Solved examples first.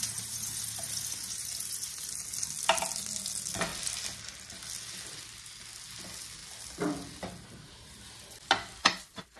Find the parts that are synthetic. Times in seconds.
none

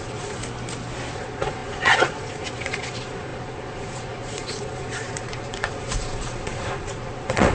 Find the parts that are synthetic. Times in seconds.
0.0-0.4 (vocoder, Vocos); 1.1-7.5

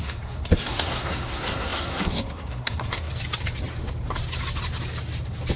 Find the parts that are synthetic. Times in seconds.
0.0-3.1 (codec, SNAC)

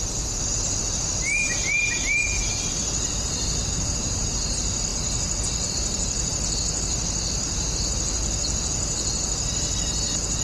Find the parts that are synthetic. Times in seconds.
none